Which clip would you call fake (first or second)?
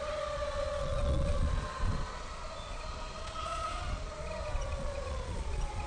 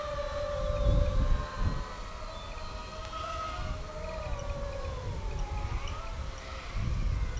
first